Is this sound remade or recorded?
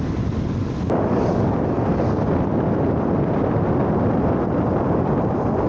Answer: recorded